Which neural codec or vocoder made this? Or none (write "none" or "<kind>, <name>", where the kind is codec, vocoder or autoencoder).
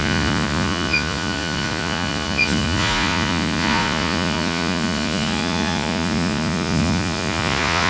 vocoder, Vocos